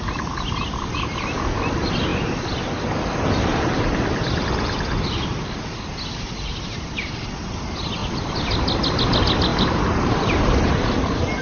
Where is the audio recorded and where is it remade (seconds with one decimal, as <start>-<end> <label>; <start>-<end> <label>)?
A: 0.0-6.5 recorded; 6.5-7.4 remade; 7.4-8.0 recorded; 8.0-8.5 remade; 8.5-9.5 recorded; 9.5-10.7 remade; 10.7-11.4 recorded